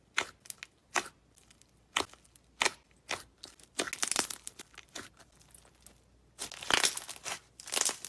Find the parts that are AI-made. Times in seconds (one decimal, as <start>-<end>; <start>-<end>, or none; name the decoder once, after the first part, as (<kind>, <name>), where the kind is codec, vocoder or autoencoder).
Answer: none